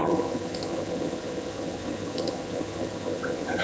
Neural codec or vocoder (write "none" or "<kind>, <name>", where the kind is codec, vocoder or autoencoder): vocoder, HiFi-GAN